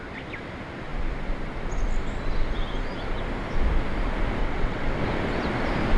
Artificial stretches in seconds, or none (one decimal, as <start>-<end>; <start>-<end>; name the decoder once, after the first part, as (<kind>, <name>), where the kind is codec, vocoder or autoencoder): 4.4-5.0 (vocoder, WaveNeXt)